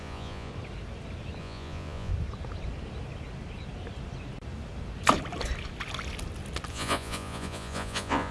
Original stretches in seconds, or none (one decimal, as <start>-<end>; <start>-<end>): 0.5-1.4; 2.1-6.7

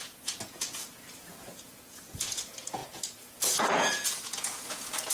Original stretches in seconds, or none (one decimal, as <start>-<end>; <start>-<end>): none

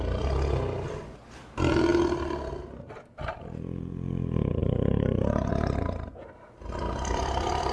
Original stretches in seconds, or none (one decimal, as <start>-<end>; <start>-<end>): 0.0-1.9; 2.5-4.6; 5.5-7.7

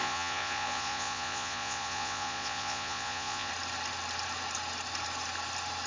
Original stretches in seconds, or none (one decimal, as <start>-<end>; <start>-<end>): 3.5-5.9

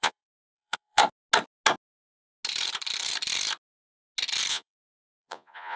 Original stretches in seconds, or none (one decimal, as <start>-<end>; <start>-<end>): 1.0-4.5

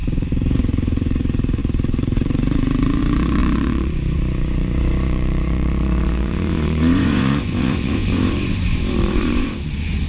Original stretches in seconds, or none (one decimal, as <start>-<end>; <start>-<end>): none

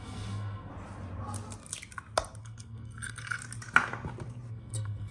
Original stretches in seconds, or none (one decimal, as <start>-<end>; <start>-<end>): 0.7-2.4; 3.4-4.5